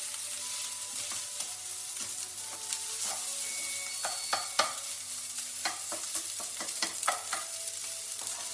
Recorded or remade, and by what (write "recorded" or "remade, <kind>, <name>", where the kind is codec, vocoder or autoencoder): recorded